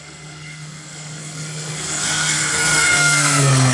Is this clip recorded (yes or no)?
no